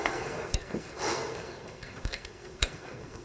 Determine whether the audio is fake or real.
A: fake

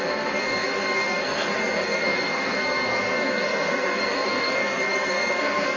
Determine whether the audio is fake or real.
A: fake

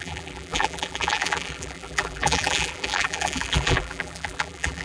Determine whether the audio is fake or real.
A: fake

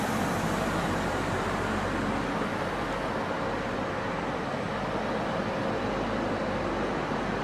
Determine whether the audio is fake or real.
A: real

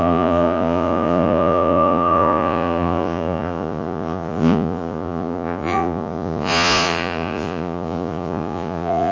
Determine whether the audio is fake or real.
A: fake